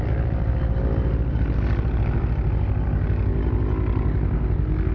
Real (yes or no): yes